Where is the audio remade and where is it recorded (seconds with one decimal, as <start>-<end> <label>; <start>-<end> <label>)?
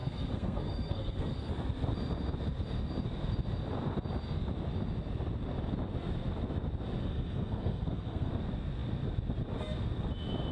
0.0-1.5 remade; 1.5-7.1 recorded; 7.1-8.3 remade; 8.3-10.5 recorded